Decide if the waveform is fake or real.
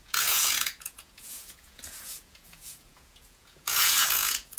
fake